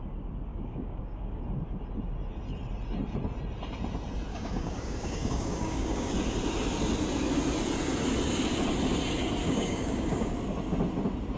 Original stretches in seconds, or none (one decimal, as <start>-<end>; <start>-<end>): 0.0-0.5; 1.4-4.3; 6.1-9.4; 10.3-11.4